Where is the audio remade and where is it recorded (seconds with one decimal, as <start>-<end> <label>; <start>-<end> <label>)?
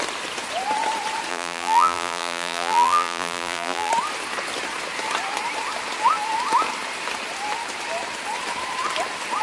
0.0-1.3 recorded; 1.3-3.9 remade; 3.9-9.4 recorded